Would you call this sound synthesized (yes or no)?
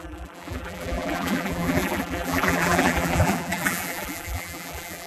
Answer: yes